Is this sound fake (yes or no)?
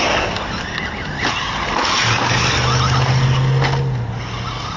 no